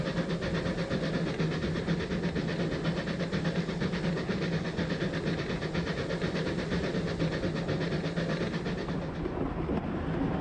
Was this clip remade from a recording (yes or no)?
no